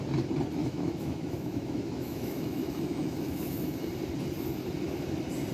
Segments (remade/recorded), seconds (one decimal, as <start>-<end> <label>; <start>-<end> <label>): 0.0-0.6 recorded; 0.6-3.9 remade; 3.9-5.5 recorded